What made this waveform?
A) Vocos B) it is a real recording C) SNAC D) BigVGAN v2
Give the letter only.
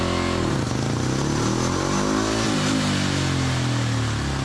B